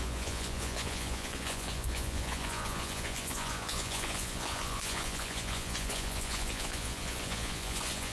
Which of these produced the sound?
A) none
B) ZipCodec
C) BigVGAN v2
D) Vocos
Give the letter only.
D